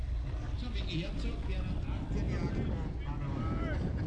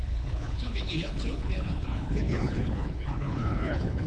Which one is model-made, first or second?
second